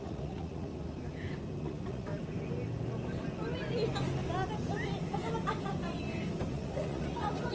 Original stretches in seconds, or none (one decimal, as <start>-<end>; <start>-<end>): 0.7-1.6; 2.1-6.5